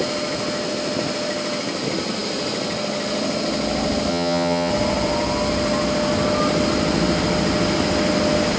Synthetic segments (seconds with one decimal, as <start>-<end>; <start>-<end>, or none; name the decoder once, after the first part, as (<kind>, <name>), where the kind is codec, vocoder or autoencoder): 4.1-4.7 (vocoder, HiFi-GAN)